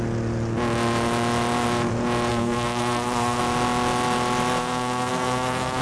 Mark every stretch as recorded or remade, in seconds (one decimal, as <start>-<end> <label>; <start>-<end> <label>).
0.0-2.3 recorded; 2.3-3.4 remade; 3.4-4.6 recorded; 4.6-5.8 remade